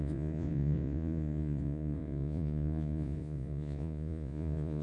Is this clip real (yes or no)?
no